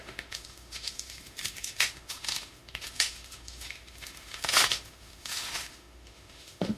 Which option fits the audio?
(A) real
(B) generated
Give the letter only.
B